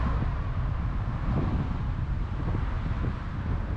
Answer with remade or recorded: recorded